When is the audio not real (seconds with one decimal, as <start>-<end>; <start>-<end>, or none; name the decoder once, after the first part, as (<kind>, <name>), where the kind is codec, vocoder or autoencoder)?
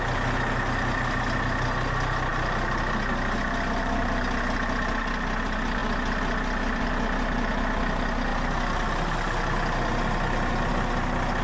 none